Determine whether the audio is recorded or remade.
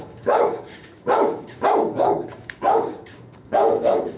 remade